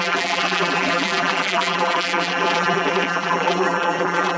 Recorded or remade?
remade